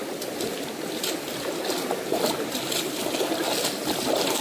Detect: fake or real real